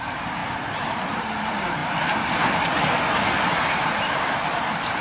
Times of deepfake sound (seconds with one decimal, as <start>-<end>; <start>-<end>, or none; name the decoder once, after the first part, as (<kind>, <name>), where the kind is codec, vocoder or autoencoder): none